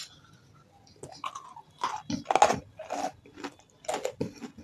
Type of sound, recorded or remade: recorded